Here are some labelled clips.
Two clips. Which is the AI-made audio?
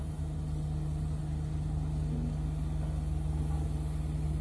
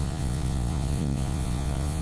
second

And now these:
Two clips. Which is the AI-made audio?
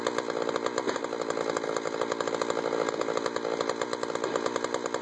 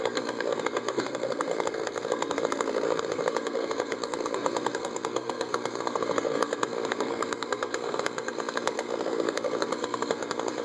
second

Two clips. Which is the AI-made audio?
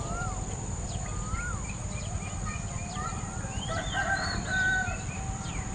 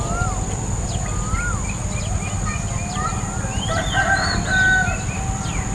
first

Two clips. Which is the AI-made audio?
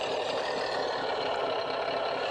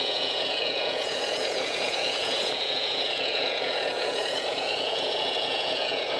second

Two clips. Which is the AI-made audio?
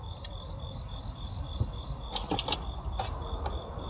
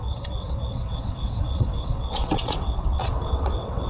second